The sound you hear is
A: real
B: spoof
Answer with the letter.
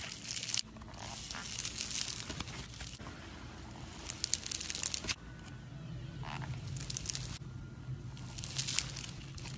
A